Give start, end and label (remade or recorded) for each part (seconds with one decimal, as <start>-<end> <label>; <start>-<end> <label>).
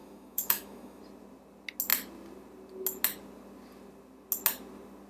0.0-1.0 remade; 1.0-5.1 recorded